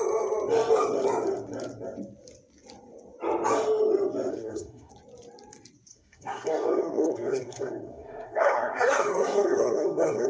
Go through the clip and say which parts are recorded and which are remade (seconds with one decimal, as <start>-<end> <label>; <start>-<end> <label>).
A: 0.0-4.3 recorded; 4.3-4.9 remade; 4.9-5.9 recorded; 5.9-10.3 remade